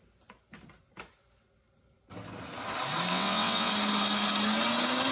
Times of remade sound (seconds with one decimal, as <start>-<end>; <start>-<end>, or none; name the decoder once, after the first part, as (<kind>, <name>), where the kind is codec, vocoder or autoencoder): 3.1-3.7 (vocoder, WaveNeXt)